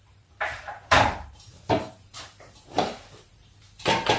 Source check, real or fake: fake